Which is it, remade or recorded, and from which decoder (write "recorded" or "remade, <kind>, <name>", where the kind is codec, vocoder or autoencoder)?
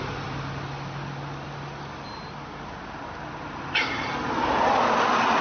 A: recorded